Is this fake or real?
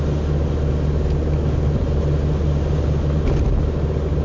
real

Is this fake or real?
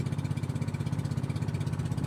real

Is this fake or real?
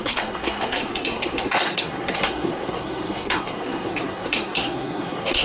fake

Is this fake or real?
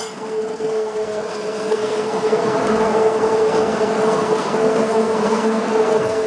fake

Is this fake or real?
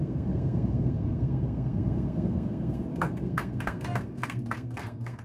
fake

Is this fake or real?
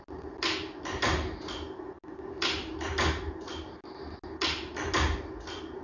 real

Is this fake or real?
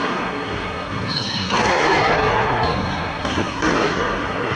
fake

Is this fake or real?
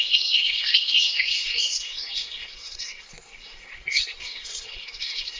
fake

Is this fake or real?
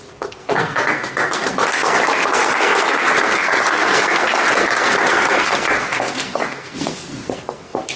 fake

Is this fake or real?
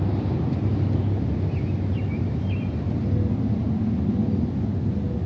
real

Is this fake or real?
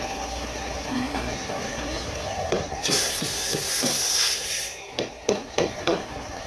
fake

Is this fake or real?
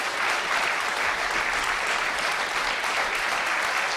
real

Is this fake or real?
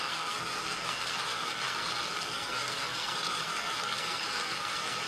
fake